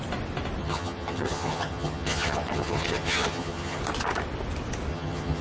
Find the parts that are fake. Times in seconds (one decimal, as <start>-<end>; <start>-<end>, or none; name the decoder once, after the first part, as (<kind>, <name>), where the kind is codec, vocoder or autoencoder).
0.6-3.8 (vocoder, HiFi-GAN); 4.9-5.4